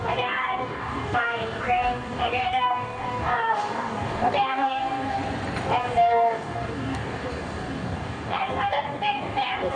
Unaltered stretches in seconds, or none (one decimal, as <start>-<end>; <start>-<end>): 5.2-5.8